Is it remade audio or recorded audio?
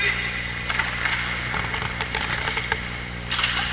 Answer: recorded